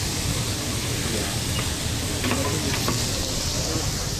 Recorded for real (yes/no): yes